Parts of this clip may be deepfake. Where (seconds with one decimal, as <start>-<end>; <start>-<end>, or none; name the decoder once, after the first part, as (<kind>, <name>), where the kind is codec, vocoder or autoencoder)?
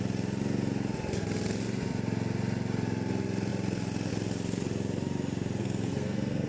5.6-6.5 (codec, SNAC)